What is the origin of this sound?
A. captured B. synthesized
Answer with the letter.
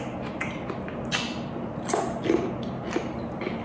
A